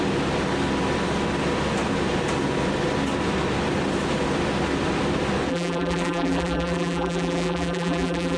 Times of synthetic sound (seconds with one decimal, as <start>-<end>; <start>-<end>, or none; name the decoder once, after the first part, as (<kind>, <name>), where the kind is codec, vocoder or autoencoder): 5.5-8.4 (vocoder, BigVGAN v2)